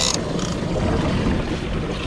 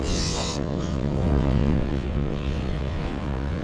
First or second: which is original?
first